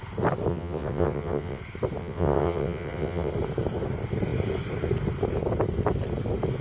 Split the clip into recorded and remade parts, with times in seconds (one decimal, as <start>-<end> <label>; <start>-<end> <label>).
0.0-0.5 recorded; 0.5-1.6 remade; 1.6-2.0 recorded; 2.0-3.3 remade; 3.3-6.6 recorded